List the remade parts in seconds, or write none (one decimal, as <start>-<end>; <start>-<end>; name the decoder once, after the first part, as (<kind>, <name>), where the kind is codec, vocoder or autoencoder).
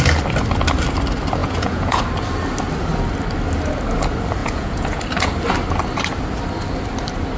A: 1.4-2.0 (vocoder, Vocos); 4.4-5.0